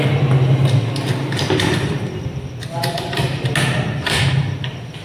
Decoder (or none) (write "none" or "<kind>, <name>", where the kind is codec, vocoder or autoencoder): none